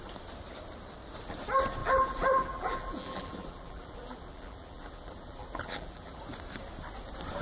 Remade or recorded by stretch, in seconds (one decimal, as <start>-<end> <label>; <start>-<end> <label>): 0.0-1.8 recorded; 1.8-6.2 remade; 6.2-7.4 recorded